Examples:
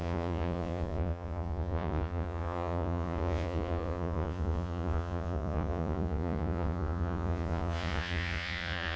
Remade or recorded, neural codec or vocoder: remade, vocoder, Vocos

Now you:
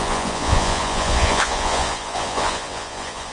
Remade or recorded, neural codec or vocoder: remade, vocoder, Vocos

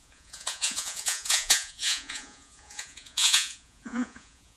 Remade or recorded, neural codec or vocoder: remade, vocoder, Vocos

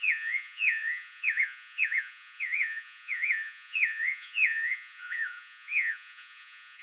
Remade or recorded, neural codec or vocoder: remade, vocoder, Vocos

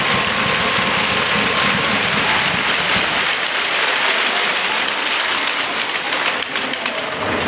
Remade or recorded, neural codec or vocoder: recorded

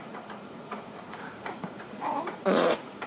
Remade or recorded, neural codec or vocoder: remade, vocoder, Vocos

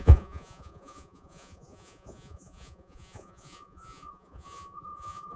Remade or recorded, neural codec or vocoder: remade, vocoder, Vocos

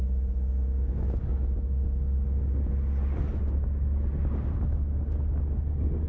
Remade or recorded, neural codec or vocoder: recorded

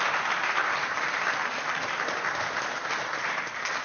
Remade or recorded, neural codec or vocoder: recorded